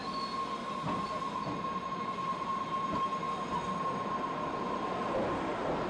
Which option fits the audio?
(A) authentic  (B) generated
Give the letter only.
A